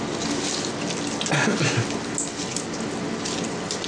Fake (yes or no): no